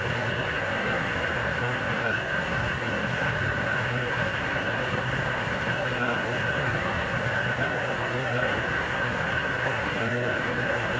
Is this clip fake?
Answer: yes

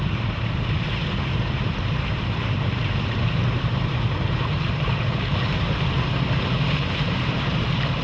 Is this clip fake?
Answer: yes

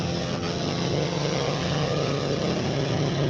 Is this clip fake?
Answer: yes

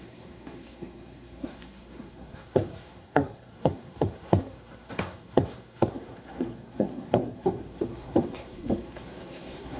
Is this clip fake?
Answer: yes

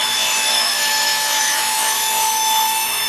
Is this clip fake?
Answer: yes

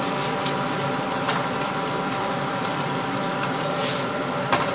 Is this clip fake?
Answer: yes